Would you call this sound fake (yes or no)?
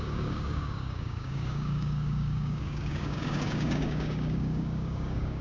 yes